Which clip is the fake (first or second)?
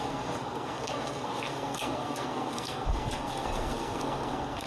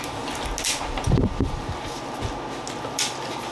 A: first